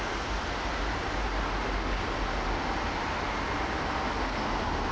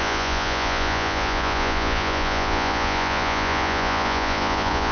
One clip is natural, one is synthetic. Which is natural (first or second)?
first